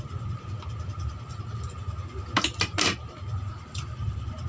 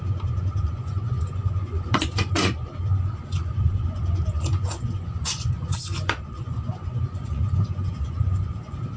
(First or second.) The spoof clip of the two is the second